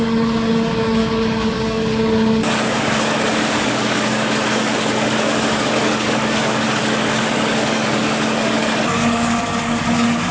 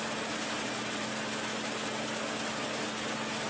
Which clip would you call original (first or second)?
second